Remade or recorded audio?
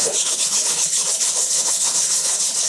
remade